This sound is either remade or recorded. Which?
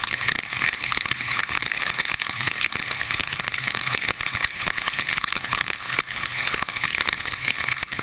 remade